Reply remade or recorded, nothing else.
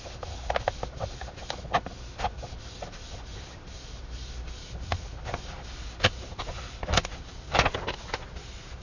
recorded